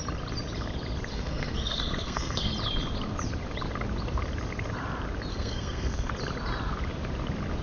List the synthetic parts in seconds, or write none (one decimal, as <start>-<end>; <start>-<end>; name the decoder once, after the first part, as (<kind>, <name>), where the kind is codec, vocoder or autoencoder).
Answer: 1.1-2.5 (codec, SNAC); 5.3-6.1